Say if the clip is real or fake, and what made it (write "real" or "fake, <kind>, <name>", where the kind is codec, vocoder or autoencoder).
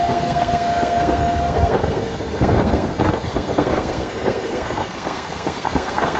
fake, codec, SNAC